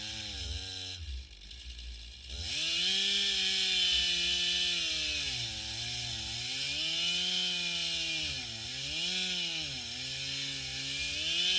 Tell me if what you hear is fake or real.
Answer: real